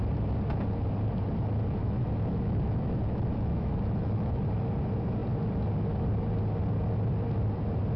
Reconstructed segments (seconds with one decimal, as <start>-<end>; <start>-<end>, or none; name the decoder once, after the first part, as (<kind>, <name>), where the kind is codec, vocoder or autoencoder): 1.8-4.4 (autoencoder, DAC-VAE)